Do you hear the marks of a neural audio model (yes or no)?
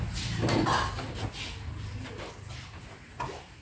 no